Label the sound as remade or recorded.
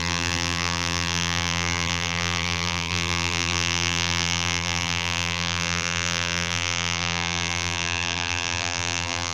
remade